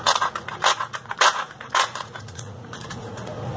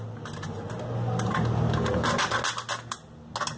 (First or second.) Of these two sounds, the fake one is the first